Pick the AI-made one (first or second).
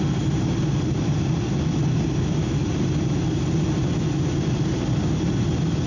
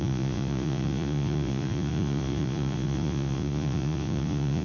second